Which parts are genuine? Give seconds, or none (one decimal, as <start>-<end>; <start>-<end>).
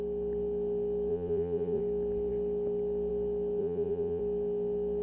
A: 0.0-1.1; 1.8-3.6; 4.2-5.0